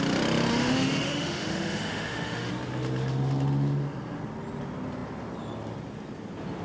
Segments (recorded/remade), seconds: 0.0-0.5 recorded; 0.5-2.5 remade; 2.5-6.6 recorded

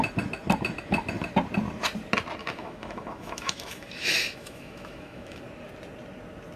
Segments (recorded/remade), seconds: 0.0-2.4 recorded; 2.4-5.4 remade; 5.4-6.6 recorded

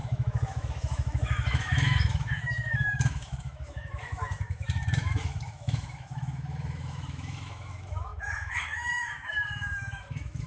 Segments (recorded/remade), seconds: 0.0-10.5 remade

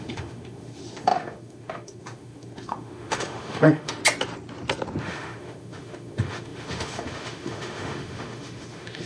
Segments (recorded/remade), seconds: 0.0-4.0 remade; 4.0-5.0 recorded; 5.0-9.1 remade

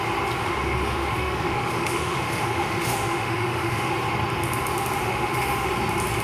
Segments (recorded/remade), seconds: 0.0-0.4 recorded; 0.4-3.9 remade; 3.9-5.0 recorded; 5.0-5.7 remade; 5.7-6.2 recorded

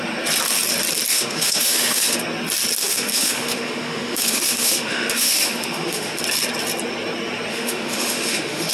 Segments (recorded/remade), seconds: 0.0-1.1 recorded; 1.1-2.2 remade; 2.2-2.8 recorded; 2.8-6.2 remade; 6.2-7.5 recorded; 7.5-8.7 remade

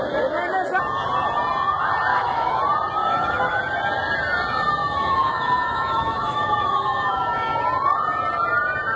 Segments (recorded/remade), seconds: 0.0-2.1 recorded; 2.1-2.6 remade; 2.6-3.0 recorded; 3.0-3.6 remade; 3.6-4.8 recorded; 4.8-7.5 remade; 7.5-9.0 recorded